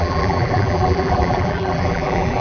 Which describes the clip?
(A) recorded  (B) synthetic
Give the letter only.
B